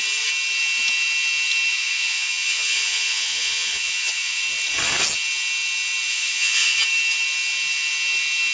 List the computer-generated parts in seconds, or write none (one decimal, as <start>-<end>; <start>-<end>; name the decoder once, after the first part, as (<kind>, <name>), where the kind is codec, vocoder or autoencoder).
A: 1.7-4.4 (vocoder, Vocos); 6.1-6.8